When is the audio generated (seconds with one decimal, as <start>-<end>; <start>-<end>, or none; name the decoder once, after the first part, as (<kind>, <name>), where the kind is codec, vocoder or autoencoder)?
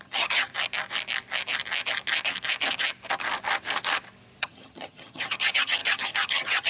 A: 0.0-0.5 (vocoder, HiFi-GAN); 4.4-6.7